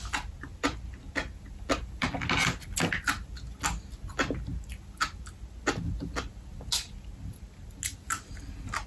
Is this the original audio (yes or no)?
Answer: yes